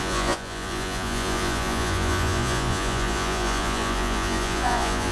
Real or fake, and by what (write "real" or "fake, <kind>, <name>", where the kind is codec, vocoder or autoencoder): fake, vocoder, Vocos